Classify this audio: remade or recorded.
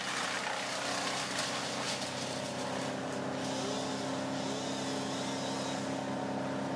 recorded